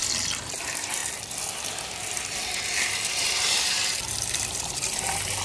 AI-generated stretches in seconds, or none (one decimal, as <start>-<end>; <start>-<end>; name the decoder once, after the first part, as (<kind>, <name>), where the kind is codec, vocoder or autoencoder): 0.6-5.4 (vocoder, BigVGAN v2)